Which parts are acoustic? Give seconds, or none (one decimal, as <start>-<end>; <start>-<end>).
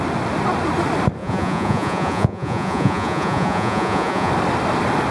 0.0-1.2; 4.3-5.1